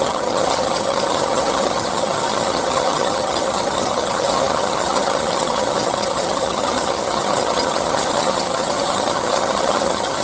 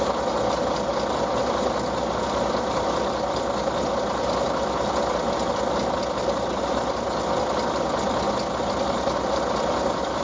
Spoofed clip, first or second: first